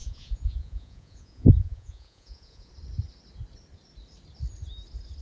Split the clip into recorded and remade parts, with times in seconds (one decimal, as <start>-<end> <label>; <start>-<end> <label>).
0.0-2.7 remade; 2.7-5.2 recorded